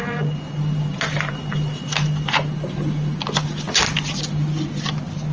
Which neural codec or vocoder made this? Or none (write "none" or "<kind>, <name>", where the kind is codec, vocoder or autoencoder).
none